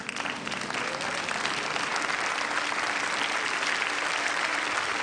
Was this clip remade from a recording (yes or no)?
no